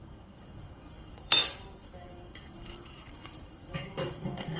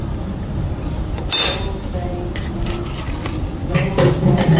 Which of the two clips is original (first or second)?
second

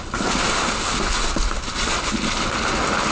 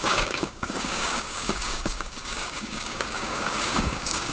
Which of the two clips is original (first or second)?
first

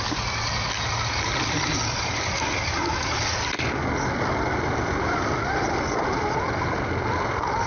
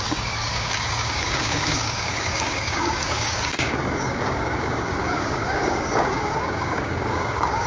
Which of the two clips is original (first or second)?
first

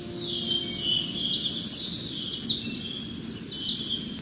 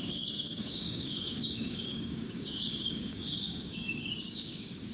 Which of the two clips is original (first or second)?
first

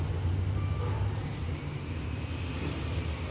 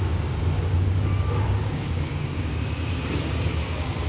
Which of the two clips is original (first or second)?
first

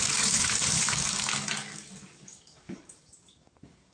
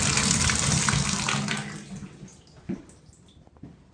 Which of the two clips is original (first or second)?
second